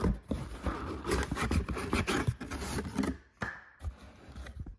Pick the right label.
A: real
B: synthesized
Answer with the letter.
A